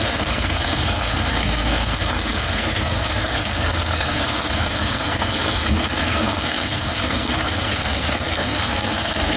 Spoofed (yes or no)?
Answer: yes